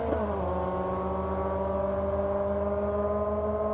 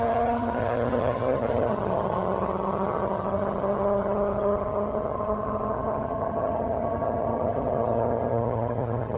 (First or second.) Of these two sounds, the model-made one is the second